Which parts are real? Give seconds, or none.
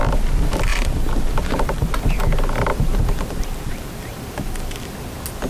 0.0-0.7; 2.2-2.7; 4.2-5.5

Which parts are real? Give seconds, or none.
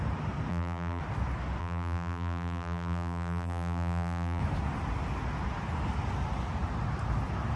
0.0-0.5; 1.0-1.6; 4.4-7.6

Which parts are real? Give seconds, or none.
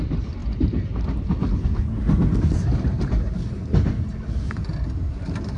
0.0-0.4; 3.6-5.6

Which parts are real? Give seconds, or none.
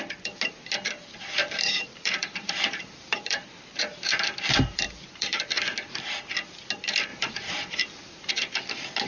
0.0-1.4; 5.4-7.1; 8.3-9.1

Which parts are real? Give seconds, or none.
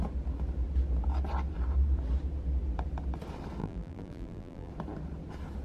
0.0-3.6; 4.7-5.6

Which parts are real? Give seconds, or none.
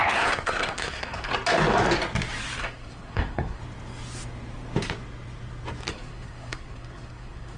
1.3-2.6; 3.6-5.9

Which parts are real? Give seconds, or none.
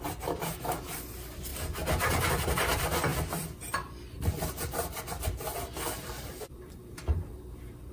1.5-2.3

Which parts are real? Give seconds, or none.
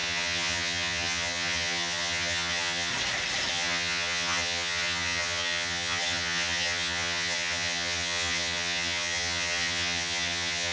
2.9-3.5